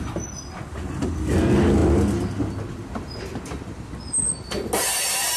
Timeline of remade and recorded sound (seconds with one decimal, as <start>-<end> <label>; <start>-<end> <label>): 0.0-5.4 recorded